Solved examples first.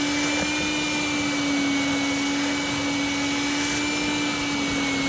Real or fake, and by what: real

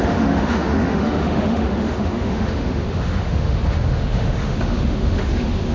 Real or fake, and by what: fake, autoencoder, DAC-VAE